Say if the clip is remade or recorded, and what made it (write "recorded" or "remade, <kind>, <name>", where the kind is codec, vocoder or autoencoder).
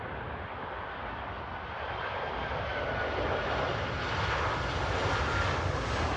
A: recorded